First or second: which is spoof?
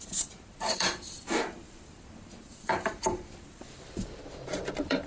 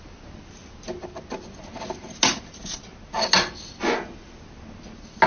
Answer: first